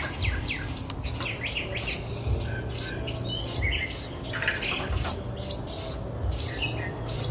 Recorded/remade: recorded